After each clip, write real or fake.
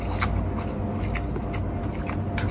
real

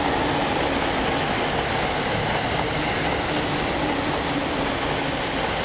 real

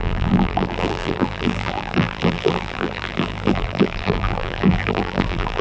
fake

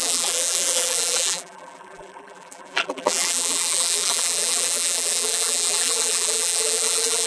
fake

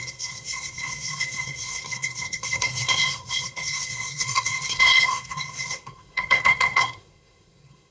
fake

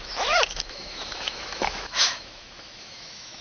fake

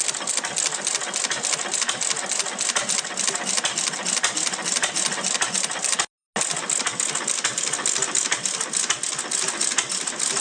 real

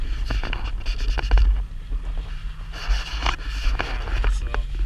real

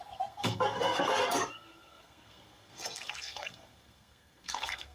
fake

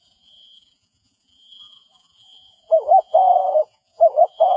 fake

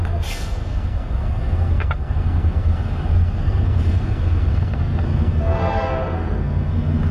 fake